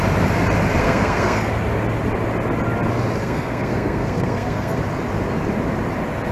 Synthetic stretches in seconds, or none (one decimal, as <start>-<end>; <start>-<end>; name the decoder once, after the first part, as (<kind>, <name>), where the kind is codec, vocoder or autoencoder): 0.8-1.5 (codec, SNAC); 3.2-4.8